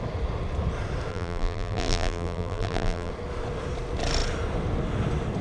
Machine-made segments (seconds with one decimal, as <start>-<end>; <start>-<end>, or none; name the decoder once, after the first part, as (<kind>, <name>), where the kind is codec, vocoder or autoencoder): 1.1-3.1 (vocoder, BigVGAN v2)